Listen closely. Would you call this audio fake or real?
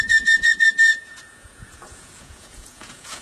fake